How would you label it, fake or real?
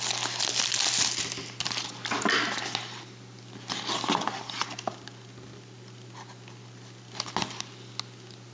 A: real